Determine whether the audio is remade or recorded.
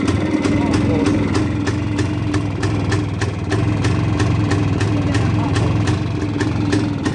recorded